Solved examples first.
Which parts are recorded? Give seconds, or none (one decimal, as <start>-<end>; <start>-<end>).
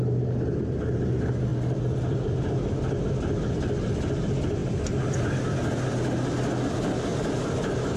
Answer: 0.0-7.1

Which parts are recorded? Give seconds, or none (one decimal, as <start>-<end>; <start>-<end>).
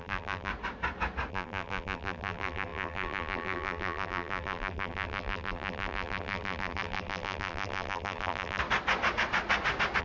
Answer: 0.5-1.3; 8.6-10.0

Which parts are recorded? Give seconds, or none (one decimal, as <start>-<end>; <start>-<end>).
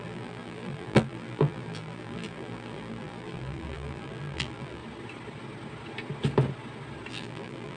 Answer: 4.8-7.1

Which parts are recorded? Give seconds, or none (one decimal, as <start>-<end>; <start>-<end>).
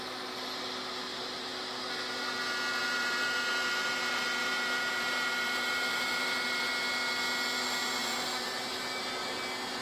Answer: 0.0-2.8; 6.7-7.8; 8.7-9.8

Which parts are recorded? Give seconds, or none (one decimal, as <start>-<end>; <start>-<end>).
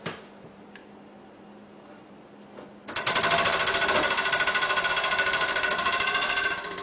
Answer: 0.8-4.9